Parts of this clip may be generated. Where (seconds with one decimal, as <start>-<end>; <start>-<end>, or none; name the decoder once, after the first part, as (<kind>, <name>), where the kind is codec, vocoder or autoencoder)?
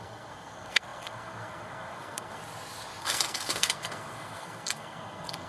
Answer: 0.0-2.4 (codec, SNAC); 3.0-5.5